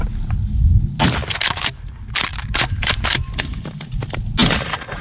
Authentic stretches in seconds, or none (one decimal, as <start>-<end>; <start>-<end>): 0.0-2.3; 3.1-5.0